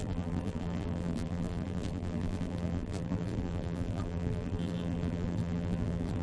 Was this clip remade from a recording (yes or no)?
yes